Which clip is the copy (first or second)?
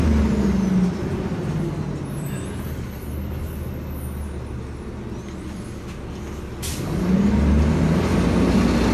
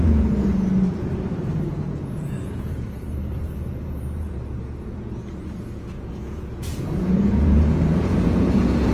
second